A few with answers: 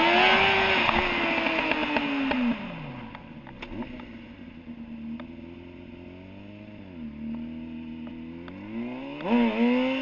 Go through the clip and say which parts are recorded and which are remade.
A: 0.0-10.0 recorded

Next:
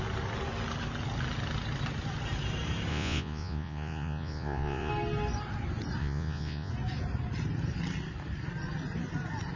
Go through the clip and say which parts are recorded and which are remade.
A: 0.0-2.9 recorded; 2.9-4.9 remade; 4.9-6.0 recorded; 6.0-6.7 remade; 6.7-9.6 recorded

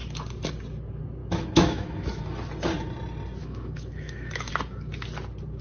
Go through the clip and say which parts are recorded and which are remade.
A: 0.0-1.2 recorded; 1.2-2.2 remade; 2.2-3.4 recorded; 3.4-4.5 remade; 4.5-5.6 recorded

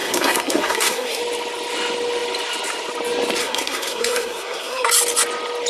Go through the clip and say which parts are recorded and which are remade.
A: 0.0-1.2 remade; 1.2-3.4 recorded; 3.4-4.9 remade; 4.9-5.7 recorded

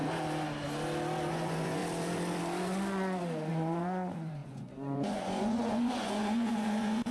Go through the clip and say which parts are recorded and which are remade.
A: 0.0-1.3 recorded; 1.3-1.8 remade; 1.8-3.5 recorded; 3.5-7.1 remade

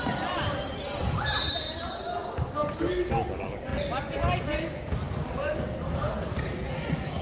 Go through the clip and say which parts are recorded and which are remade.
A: 0.0-7.2 recorded